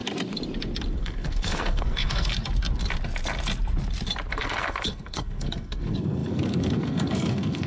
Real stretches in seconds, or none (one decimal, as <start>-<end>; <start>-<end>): 0.0-1.0; 2.3-4.3